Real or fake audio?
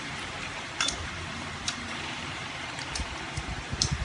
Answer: fake